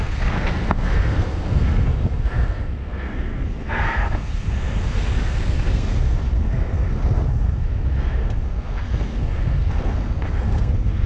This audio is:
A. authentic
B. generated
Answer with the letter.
B